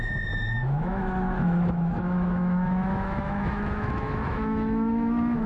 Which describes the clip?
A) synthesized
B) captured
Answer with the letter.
A